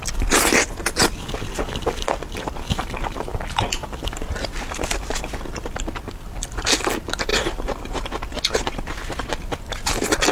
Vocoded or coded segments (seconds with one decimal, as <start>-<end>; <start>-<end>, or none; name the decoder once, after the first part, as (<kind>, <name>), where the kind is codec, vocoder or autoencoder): 7.3-8.1 (vocoder, BigVGAN v2)